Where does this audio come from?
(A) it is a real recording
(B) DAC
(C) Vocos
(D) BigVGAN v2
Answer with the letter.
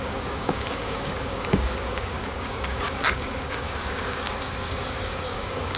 B